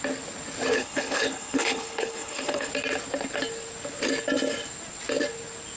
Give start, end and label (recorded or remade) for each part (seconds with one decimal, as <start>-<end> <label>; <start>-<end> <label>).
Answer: 0.0-0.7 recorded; 0.7-2.7 remade; 2.7-5.8 recorded